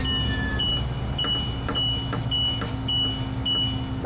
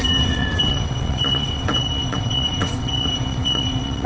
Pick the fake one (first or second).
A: second